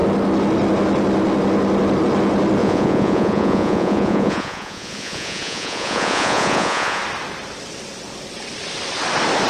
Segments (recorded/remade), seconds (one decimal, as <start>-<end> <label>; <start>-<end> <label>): 0.0-2.6 recorded; 2.6-7.0 remade; 7.0-9.5 recorded